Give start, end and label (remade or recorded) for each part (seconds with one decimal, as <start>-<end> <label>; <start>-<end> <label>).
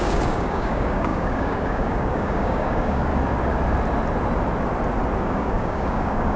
0.0-3.1 remade; 3.1-5.2 recorded; 5.2-6.4 remade